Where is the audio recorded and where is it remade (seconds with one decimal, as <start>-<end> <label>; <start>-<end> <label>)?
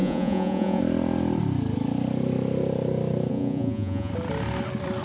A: 0.0-0.8 remade; 0.8-3.3 recorded; 3.3-4.1 remade; 4.1-5.0 recorded